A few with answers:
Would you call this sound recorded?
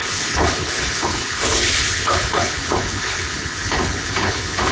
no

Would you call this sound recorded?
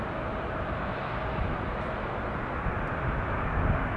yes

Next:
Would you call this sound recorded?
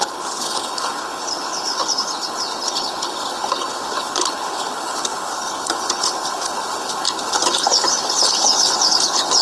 no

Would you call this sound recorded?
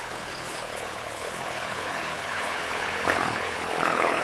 no